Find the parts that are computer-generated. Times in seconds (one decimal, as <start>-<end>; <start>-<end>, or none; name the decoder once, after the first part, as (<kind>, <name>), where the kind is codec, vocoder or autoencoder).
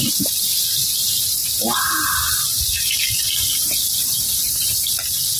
none